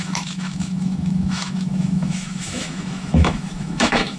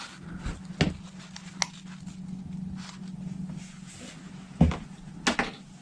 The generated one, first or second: first